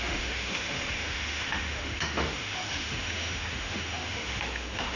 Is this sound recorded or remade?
remade